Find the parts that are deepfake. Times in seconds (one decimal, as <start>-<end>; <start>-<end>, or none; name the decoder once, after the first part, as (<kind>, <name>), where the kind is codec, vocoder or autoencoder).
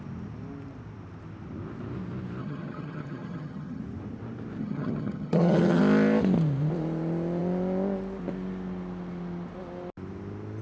2.4-3.8 (vocoder, HiFi-GAN); 4.6-5.8